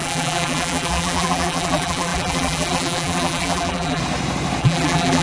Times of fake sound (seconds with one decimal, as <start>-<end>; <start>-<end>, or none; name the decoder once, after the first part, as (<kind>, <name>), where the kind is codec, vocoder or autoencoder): 0.0-4.0 (vocoder, BigVGAN v2); 4.6-5.2